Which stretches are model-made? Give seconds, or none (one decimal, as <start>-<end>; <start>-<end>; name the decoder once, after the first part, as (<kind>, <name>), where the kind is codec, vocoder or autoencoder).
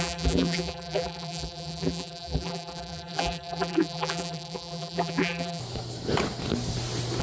0.0-5.6 (vocoder, BigVGAN v2)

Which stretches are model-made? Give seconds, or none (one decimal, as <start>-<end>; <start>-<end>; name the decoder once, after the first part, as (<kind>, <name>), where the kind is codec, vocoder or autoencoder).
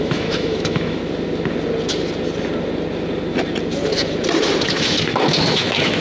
0.0-1.0 (autoencoder, DAC-VAE); 4.6-6.0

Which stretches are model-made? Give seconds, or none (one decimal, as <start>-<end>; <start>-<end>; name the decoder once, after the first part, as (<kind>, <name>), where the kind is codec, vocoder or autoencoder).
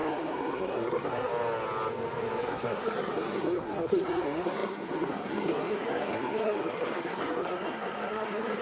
0.0-1.3 (codec, SNAC); 2.4-8.6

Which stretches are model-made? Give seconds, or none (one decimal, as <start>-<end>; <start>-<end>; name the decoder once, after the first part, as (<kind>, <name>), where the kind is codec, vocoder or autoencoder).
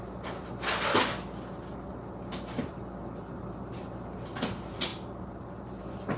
none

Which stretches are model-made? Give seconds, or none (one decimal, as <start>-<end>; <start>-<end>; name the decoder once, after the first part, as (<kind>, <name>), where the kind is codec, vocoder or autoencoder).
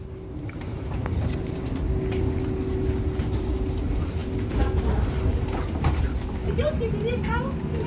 6.4-6.9 (vocoder, BigVGAN v2)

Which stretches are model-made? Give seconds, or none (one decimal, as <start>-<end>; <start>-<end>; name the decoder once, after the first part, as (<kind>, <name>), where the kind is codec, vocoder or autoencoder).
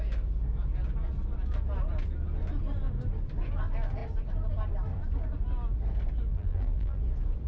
6.3-7.0 (vocoder, BigVGAN v2)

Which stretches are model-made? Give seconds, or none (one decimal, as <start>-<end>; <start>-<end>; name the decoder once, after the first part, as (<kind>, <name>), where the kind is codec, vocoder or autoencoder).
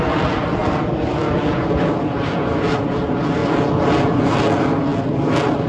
none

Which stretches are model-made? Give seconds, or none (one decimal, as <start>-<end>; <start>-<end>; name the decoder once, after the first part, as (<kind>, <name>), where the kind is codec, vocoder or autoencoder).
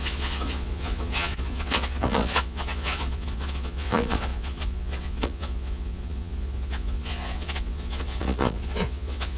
0.0-9.4 (vocoder, Vocos)